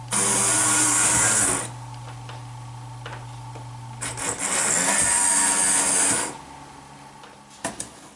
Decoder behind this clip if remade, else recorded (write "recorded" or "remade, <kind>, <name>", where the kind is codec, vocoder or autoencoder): recorded